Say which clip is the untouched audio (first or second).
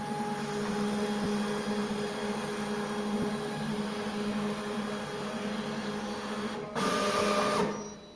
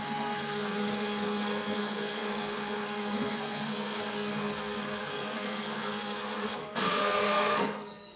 first